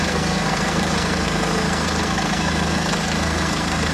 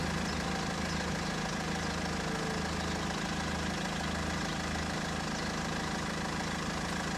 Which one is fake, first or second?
first